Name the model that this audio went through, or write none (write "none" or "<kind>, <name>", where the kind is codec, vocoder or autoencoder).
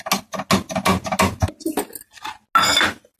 none